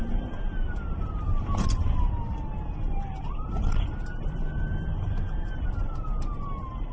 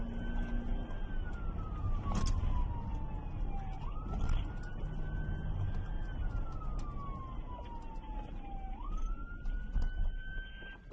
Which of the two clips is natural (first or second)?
second